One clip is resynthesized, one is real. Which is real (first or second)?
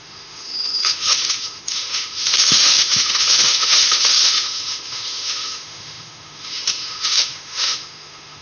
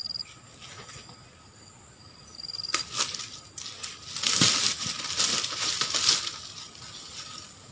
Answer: second